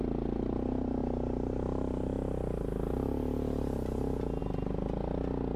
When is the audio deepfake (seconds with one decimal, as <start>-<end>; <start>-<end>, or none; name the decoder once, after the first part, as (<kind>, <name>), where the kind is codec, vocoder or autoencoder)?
none